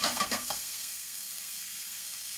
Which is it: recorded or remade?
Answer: remade